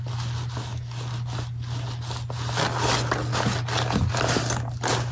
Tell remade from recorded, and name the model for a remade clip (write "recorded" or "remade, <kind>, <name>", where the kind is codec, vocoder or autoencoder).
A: recorded